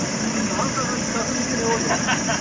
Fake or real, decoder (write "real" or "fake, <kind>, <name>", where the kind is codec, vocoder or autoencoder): real